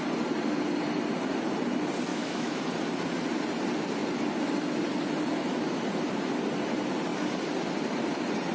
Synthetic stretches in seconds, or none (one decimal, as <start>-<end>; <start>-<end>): 2.1-2.6